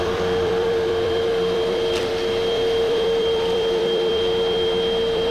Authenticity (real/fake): fake